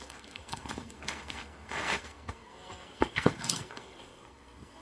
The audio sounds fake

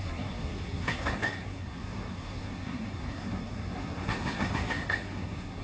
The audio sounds fake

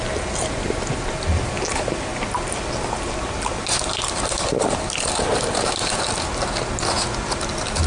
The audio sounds real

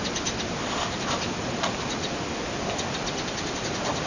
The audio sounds real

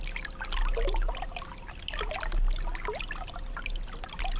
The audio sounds real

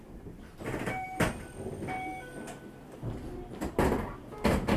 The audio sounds real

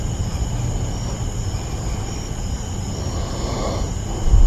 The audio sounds real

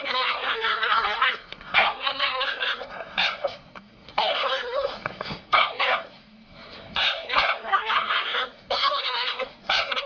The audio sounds fake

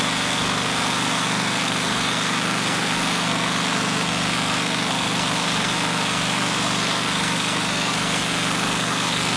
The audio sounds fake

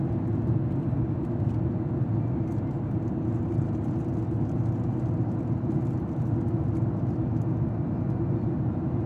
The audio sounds real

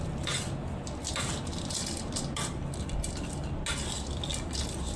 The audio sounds real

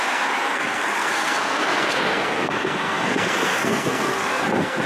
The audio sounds fake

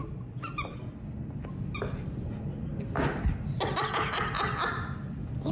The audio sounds real